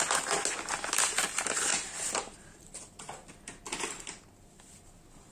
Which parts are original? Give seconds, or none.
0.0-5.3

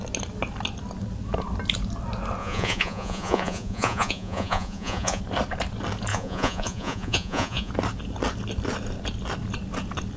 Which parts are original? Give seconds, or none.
0.0-2.4; 5.2-6.1; 7.7-10.2

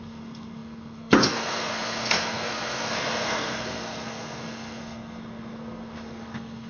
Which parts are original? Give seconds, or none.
none

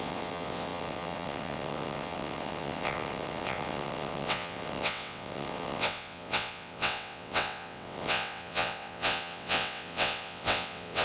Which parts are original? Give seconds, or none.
none

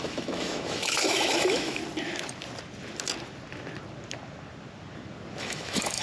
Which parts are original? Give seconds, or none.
1.8-5.4

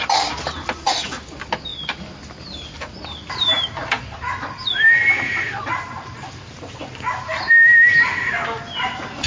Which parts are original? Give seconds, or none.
0.0-9.3